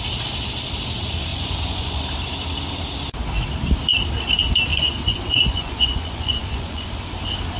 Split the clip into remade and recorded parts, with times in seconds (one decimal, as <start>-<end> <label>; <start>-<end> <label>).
0.0-1.3 recorded; 1.3-2.0 remade; 2.0-4.7 recorded; 4.7-6.9 remade; 6.9-7.6 recorded